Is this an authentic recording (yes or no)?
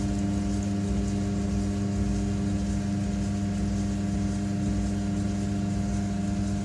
yes